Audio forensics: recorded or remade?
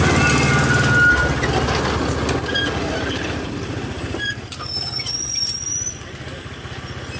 recorded